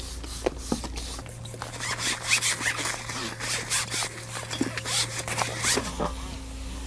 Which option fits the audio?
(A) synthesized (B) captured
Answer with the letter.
B